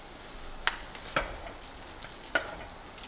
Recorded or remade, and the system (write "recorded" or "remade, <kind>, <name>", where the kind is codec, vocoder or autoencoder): recorded